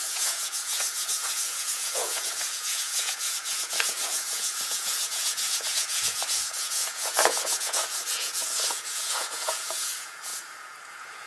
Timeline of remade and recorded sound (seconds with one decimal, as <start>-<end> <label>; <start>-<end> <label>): 0.0-11.3 remade